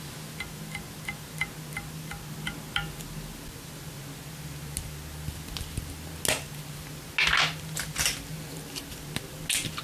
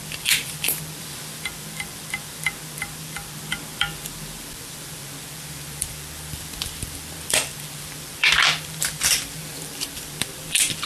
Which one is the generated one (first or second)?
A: second